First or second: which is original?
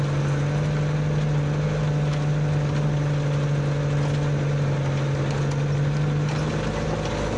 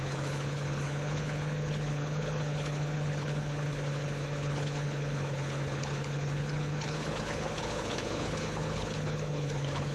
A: first